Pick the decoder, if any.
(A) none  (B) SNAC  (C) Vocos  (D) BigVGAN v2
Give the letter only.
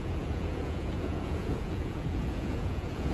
C